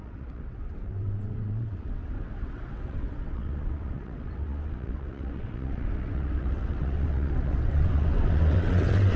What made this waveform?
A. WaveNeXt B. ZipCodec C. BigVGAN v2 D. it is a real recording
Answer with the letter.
A